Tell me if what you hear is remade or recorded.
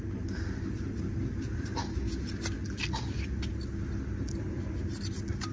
recorded